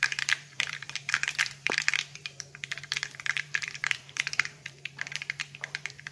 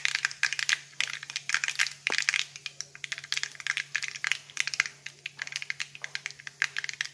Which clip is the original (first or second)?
second